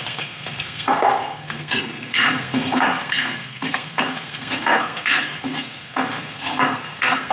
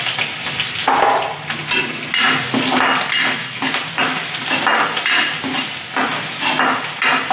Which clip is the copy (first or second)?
first